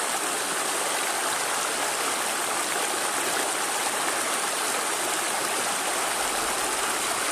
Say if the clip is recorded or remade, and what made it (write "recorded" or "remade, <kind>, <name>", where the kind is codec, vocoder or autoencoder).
recorded